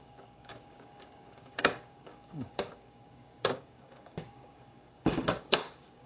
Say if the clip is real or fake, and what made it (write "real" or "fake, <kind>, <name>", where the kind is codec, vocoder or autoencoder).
fake, codec, DAC